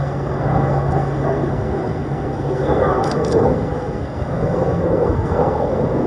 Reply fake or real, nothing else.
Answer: fake